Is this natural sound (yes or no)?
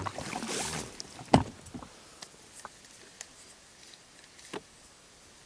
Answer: yes